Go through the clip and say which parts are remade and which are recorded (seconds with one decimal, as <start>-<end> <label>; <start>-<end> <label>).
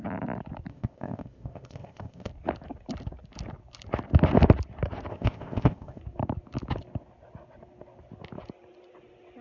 0.0-0.7 recorded; 0.7-2.3 remade; 2.3-5.1 recorded; 5.1-6.0 remade; 6.0-9.4 recorded